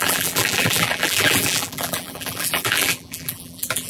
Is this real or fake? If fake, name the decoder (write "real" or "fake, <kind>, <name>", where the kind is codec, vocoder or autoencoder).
fake, vocoder, BigVGAN v2